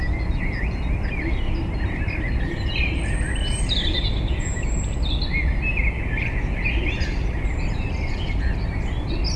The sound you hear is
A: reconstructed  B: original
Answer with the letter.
A